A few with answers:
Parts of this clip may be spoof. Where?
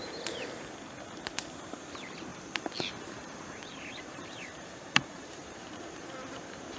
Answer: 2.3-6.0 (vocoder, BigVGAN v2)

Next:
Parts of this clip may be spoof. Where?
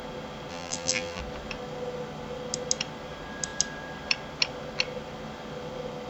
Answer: 0.5-1.2 (vocoder, BigVGAN v2)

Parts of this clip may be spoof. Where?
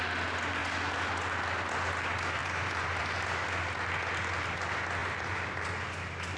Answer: 2.4-3.0 (vocoder, BigVGAN v2); 5.0-5.7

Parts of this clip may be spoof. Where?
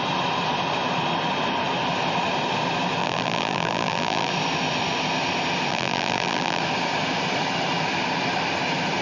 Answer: 3.0-4.3 (vocoder, BigVGAN v2); 5.7-6.6